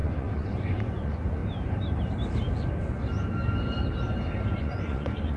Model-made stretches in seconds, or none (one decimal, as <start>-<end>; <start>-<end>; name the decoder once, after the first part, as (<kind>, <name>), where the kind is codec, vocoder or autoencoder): 0.0-1.4 (vocoder, Vocos); 4.6-5.4